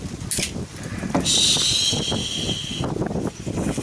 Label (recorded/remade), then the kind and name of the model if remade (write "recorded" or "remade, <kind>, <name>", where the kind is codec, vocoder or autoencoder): recorded